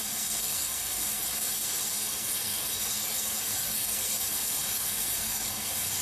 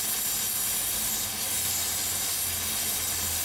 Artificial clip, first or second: first